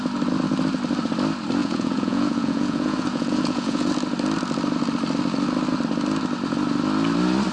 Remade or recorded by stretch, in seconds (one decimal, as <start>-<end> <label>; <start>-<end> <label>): 0.0-1.6 recorded; 1.6-3.9 remade; 3.9-7.5 recorded